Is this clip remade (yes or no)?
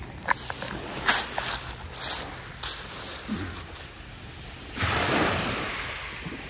no